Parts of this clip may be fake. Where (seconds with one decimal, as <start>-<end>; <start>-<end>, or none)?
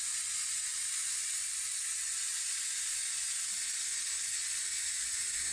none